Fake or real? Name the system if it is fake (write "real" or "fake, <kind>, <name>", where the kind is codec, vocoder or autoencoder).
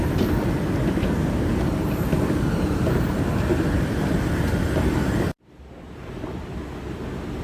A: real